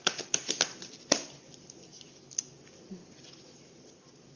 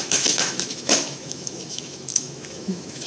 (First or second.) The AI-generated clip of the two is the second